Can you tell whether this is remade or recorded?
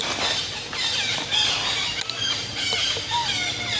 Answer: recorded